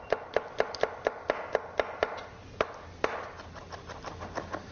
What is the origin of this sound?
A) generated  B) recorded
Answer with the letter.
B